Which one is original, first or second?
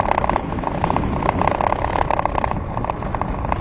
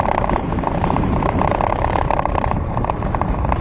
first